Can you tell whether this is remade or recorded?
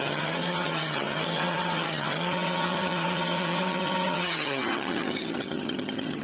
remade